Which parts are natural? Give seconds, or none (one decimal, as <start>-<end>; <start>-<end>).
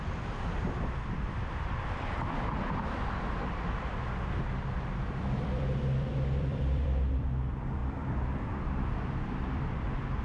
none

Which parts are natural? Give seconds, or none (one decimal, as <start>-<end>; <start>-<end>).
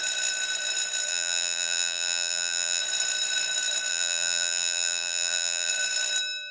0.0-1.1; 2.8-3.9; 5.7-6.5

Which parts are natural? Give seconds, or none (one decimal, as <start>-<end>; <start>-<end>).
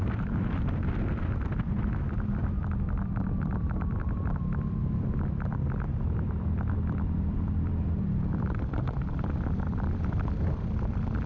none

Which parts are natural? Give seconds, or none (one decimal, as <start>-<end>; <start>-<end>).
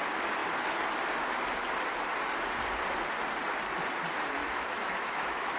0.0-4.4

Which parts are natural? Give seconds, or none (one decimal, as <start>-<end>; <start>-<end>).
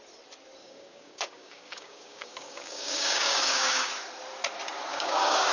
0.0-0.6; 3.9-4.9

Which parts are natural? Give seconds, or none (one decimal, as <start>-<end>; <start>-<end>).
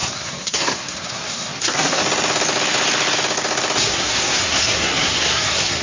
2.0-3.8